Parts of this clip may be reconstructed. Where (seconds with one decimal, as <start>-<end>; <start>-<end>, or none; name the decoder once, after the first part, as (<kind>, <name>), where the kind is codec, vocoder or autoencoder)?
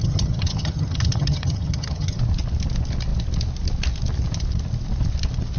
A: 0.0-2.2 (vocoder, HiFi-GAN)